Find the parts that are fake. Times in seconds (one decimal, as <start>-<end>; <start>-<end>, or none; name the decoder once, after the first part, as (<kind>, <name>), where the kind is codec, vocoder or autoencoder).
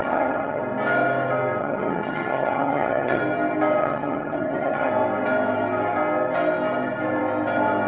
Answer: 0.0-0.6 (vocoder, HiFi-GAN); 1.6-3.2; 3.8-4.9